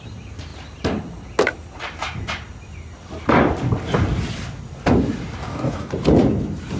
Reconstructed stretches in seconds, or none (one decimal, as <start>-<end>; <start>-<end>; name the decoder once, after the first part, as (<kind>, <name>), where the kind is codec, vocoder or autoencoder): 5.4-5.9 (codec, DAC)